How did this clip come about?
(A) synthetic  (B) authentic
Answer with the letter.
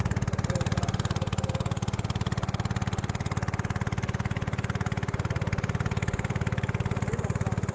B